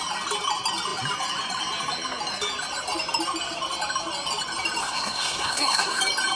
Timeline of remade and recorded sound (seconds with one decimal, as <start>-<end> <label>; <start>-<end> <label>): 0.0-4.8 recorded; 4.8-6.0 remade; 6.0-6.4 recorded

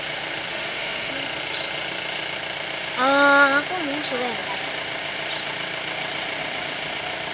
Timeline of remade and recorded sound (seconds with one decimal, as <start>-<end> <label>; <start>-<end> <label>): 0.0-0.5 recorded; 0.5-1.1 remade; 1.1-7.3 recorded

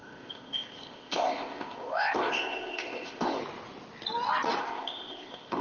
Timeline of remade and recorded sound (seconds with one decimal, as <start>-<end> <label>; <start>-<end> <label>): 0.0-3.4 remade; 3.4-4.6 recorded; 4.6-5.6 remade

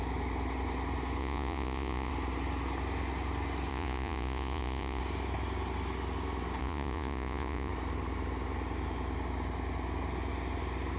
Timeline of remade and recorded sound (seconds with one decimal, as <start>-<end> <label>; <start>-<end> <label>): 0.0-1.2 recorded; 1.2-2.1 remade; 2.1-3.7 recorded; 3.7-5.0 remade; 5.0-6.6 recorded; 6.6-7.7 remade; 7.7-11.0 recorded

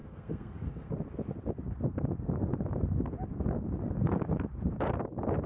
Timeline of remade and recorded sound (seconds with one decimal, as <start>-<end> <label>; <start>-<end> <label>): 0.0-0.9 remade; 0.9-5.5 recorded